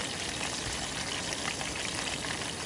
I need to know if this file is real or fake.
real